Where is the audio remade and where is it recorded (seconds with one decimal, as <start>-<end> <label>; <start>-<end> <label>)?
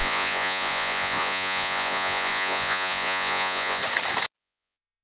0.0-3.8 remade; 3.8-4.4 recorded; 4.4-5.0 remade